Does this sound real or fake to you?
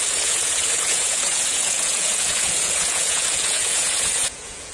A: fake